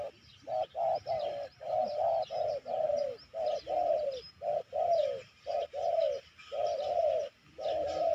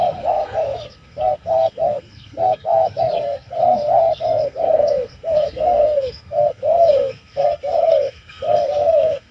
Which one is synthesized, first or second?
second